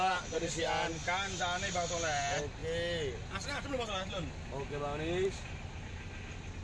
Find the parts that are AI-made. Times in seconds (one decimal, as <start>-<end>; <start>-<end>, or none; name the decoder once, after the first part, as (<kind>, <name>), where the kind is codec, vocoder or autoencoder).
none